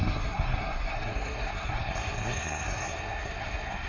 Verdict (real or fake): fake